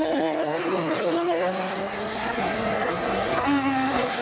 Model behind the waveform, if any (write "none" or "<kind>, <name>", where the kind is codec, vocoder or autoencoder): codec, SNAC